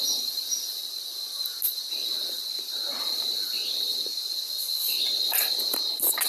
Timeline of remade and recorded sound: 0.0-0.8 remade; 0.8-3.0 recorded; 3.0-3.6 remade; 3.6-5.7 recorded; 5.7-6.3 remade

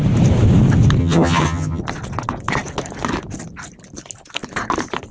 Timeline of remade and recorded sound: 0.0-1.0 recorded; 1.0-1.8 remade; 1.8-5.1 recorded

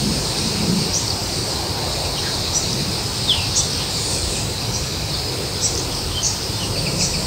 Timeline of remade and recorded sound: 0.0-1.2 recorded; 1.2-1.7 remade; 1.7-4.1 recorded; 4.1-5.1 remade; 5.1-7.3 recorded

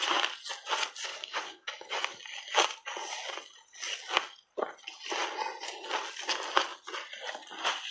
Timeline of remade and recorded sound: 0.0-1.1 recorded; 1.1-2.2 remade; 2.2-7.9 recorded

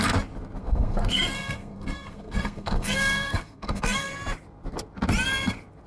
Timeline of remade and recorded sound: 0.0-0.6 recorded; 0.6-4.1 remade; 4.1-5.9 recorded

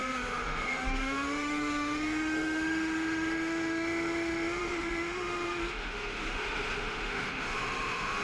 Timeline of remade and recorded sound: 0.0-8.2 remade